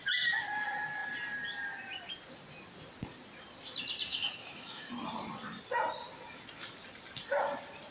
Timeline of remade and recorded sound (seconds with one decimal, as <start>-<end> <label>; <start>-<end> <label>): 0.0-4.1 recorded; 4.1-4.9 remade; 4.9-7.9 recorded